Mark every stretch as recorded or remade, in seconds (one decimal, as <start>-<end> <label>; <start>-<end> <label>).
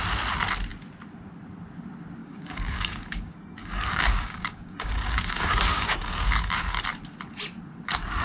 0.0-2.2 recorded; 2.2-6.8 remade; 6.8-8.2 recorded